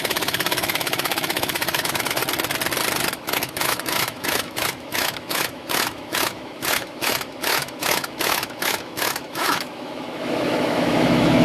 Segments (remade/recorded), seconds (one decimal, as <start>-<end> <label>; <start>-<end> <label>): 0.0-2.2 remade; 2.2-3.1 recorded; 3.1-11.4 remade